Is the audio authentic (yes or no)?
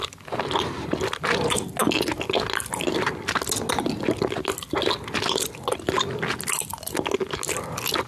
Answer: yes